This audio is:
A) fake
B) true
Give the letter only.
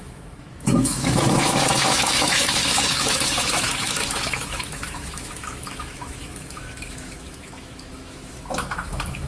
A